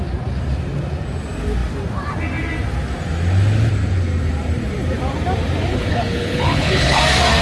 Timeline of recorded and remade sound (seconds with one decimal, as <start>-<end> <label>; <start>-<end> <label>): 0.0-5.7 recorded; 5.7-7.0 remade; 7.0-7.4 recorded